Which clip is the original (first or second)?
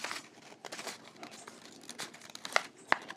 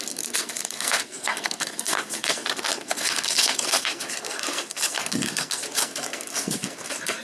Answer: first